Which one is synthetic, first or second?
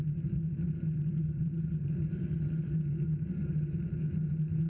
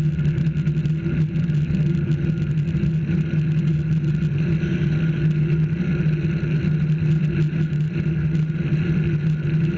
first